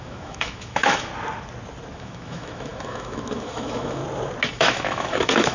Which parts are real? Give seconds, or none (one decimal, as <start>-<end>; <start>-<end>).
1.1-1.9; 4.0-4.5